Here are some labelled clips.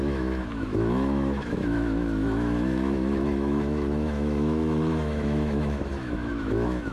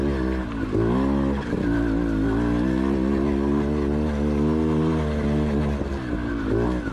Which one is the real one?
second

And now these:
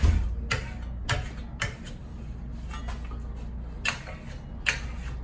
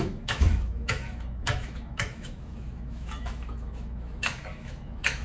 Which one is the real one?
first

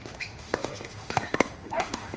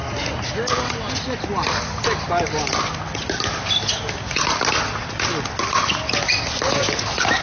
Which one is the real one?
second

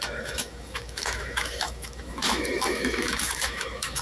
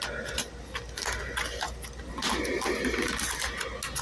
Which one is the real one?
second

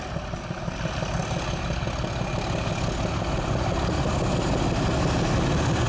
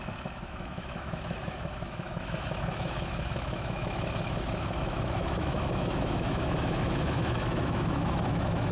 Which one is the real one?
first